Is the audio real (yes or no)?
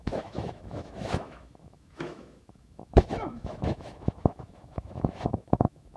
no